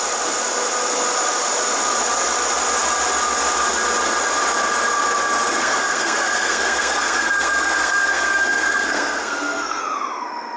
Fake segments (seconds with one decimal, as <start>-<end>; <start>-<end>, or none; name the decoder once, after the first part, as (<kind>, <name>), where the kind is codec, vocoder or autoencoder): 5.6-9.8 (codec, SNAC)

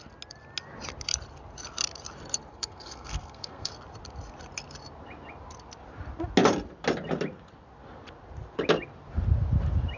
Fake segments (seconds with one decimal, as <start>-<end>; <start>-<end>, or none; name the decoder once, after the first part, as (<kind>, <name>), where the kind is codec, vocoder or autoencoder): 2.5-3.7 (codec, SNAC)

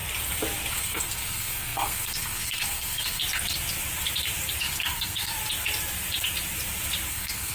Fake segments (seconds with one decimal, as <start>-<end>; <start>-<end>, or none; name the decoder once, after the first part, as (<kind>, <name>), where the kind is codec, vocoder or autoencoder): 0.7-3.2 (codec, SNAC); 4.6-5.3; 7.1-7.5

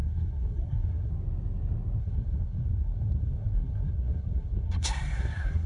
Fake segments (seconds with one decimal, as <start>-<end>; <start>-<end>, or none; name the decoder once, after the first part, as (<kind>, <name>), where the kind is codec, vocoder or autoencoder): 0.0-1.1 (codec, SNAC); 2.0-5.7

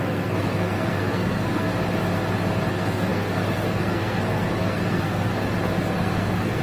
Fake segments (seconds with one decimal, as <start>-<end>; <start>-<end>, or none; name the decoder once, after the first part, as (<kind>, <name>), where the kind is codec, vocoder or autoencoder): 0.0-1.7 (codec, SNAC); 2.7-5.3; 5.9-6.6

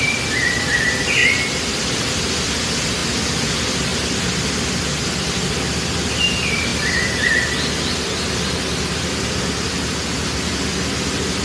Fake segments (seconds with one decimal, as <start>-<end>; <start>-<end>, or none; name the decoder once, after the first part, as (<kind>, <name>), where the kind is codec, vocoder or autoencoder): none